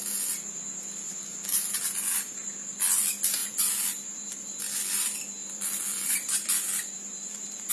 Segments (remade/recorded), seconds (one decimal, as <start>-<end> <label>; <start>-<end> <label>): 0.0-3.4 recorded; 3.4-4.6 remade; 4.6-5.4 recorded; 5.4-7.7 remade